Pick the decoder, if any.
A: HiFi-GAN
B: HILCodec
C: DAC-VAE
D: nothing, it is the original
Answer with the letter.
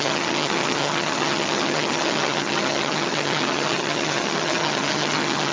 A